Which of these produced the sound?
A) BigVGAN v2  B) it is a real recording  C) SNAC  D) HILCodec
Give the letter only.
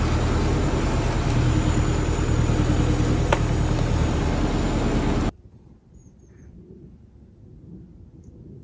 B